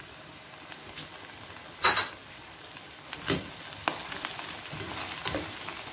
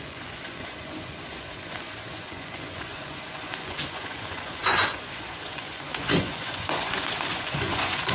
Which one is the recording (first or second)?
first